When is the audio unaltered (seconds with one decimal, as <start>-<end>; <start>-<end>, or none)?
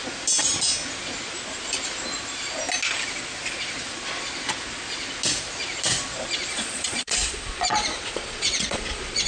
0.0-6.5